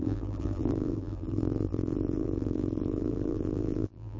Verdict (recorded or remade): remade